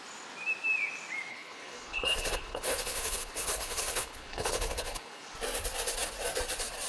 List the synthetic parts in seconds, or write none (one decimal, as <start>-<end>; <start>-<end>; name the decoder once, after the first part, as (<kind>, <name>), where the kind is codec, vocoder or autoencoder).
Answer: 1.3-5.3 (codec, HILCodec)